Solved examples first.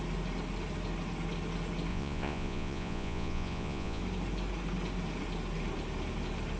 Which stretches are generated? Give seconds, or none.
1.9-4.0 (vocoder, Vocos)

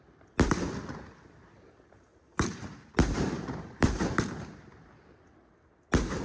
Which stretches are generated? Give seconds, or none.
2.1-4.2 (vocoder, BigVGAN v2)

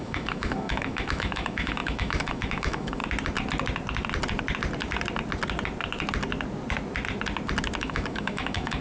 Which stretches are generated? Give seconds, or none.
0.0-3.0 (autoencoder, DAC-VAE); 7.8-8.8

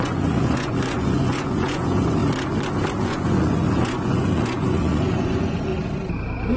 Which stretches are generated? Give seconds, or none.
0.0-2.2 (vocoder, Vocos); 3.0-5.7

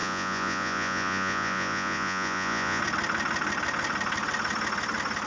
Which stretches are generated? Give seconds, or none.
0.0-2.8 (vocoder, Vocos)

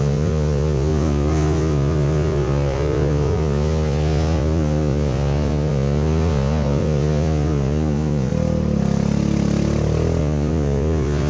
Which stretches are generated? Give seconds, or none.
0.0-8.3 (vocoder, Vocos); 10.2-11.3